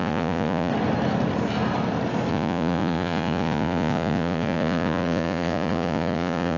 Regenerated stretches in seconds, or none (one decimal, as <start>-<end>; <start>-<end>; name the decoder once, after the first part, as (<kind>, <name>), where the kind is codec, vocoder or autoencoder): 0.0-0.7 (vocoder, Vocos); 2.3-6.6